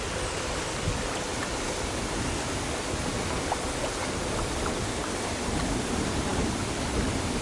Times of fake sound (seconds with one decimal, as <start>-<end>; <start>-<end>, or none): none